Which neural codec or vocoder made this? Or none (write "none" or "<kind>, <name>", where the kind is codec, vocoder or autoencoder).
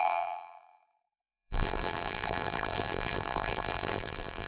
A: vocoder, BigVGAN v2